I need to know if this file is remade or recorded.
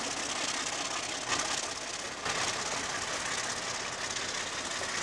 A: recorded